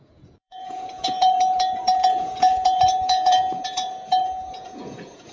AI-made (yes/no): yes